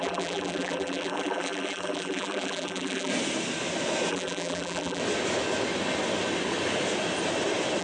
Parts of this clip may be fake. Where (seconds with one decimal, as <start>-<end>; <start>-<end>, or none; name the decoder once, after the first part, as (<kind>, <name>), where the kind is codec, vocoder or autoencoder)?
0.0-3.1 (vocoder, BigVGAN v2); 4.1-5.0